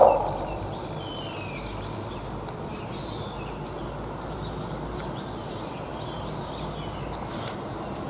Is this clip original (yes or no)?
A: yes